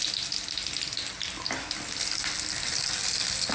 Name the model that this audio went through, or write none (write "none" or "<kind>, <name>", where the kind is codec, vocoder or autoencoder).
none